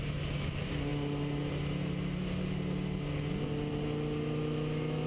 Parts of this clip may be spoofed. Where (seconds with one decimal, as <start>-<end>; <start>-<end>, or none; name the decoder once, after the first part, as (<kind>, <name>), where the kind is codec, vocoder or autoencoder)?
none

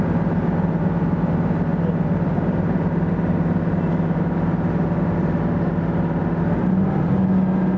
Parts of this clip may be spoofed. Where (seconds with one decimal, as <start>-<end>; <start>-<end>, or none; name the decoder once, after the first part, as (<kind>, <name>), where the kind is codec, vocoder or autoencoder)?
none

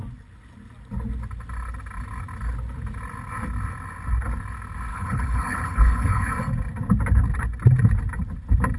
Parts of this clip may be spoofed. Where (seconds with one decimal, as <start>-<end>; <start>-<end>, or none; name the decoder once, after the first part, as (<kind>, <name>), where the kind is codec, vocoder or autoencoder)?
4.9-6.3 (codec, HILCodec)

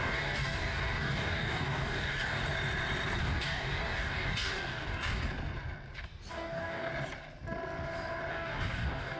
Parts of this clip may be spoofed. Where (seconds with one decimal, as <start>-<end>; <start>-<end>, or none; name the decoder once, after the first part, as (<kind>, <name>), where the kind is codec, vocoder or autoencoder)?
0.0-2.4 (codec, DAC); 3.2-5.2; 6.3-6.9; 8.3-9.2

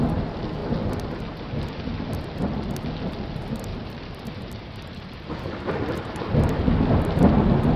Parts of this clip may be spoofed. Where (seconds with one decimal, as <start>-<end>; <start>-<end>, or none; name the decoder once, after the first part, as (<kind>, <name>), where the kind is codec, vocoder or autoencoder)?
3.7-5.5 (vocoder, BigVGAN v2)